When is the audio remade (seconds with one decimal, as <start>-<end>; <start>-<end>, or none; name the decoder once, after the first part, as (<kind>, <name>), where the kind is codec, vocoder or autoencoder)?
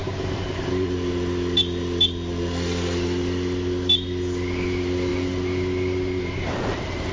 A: none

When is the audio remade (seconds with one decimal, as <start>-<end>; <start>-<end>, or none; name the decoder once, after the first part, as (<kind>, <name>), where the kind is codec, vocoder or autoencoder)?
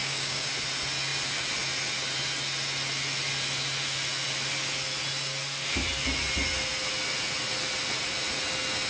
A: 0.0-0.5 (codec, DAC)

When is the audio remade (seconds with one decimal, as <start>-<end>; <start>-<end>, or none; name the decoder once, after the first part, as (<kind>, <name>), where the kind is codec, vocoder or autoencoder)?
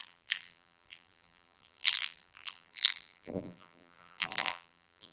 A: 0.0-5.1 (vocoder, BigVGAN v2)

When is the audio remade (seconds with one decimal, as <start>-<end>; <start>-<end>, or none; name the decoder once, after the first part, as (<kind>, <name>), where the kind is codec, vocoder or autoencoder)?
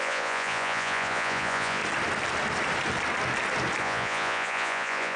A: 0.0-1.8 (vocoder, Vocos); 3.8-5.2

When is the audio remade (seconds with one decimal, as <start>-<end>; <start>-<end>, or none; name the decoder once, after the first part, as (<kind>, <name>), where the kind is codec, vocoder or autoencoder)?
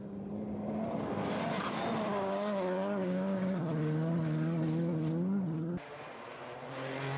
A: 2.1-3.6 (codec, DAC)